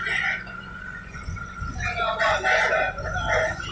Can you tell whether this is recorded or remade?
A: remade